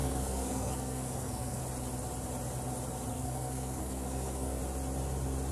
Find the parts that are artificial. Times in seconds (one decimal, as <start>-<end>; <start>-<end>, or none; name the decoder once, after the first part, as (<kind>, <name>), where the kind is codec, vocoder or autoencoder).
0.0-1.6 (codec, SNAC); 3.1-4.6